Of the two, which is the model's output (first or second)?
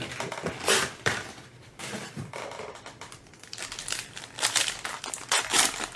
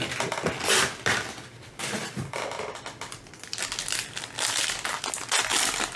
first